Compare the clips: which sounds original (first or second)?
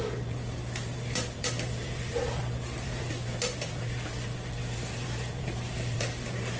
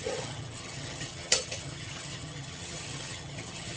first